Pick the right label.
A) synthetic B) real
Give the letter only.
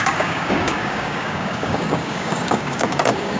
A